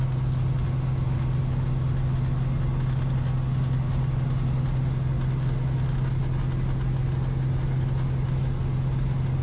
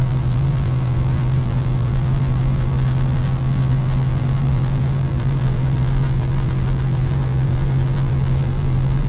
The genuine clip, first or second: first